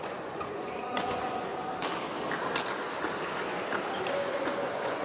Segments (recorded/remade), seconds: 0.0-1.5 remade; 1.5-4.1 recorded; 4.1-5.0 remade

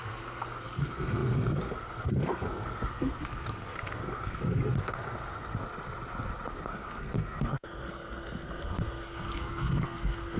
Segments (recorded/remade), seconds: 0.0-5.6 remade; 5.6-6.5 recorded; 6.5-10.4 remade

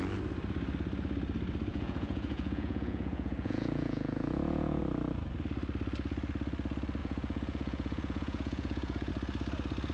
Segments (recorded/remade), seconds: 0.0-1.7 recorded; 1.7-4.8 remade; 4.8-7.0 recorded; 7.0-9.1 remade; 9.1-9.9 recorded

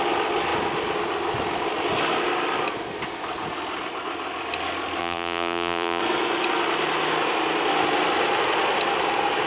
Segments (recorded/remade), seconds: 0.0-5.0 recorded; 5.0-6.0 remade; 6.0-9.5 recorded

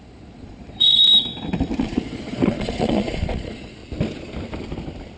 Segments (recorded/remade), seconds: 0.0-1.1 remade; 1.1-1.8 recorded; 1.8-3.8 remade; 3.8-5.2 recorded

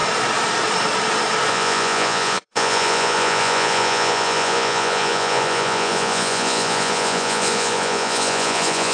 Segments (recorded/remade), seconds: 0.0-1.5 recorded; 1.5-8.9 remade